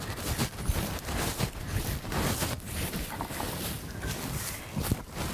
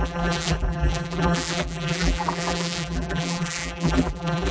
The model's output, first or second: second